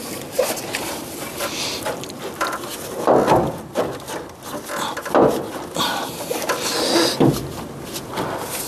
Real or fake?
real